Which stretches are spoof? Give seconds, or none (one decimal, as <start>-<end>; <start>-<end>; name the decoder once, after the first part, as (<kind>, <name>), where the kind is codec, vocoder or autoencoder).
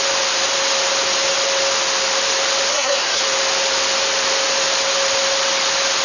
2.7-3.2 (codec, SNAC)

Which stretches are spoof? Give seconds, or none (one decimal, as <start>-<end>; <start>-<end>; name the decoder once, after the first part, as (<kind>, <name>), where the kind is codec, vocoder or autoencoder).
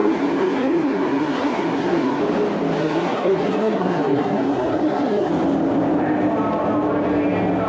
0.0-2.2 (codec, SNAC); 2.8-5.3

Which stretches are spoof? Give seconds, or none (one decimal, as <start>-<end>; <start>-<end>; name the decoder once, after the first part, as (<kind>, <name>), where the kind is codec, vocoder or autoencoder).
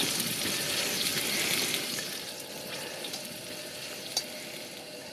none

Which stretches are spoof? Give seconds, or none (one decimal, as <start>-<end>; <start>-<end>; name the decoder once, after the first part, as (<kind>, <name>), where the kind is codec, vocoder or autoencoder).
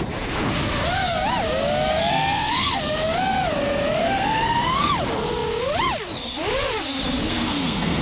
1.9-2.8 (codec, SNAC); 4.0-4.9; 7.3-8.0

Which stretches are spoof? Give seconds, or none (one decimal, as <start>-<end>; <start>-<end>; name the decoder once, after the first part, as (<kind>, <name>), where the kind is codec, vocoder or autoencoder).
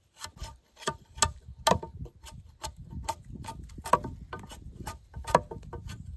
none